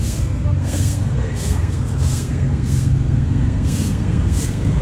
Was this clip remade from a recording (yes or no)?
yes